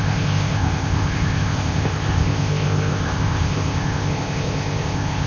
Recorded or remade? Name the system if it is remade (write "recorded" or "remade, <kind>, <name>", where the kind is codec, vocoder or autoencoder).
remade, codec, ZipCodec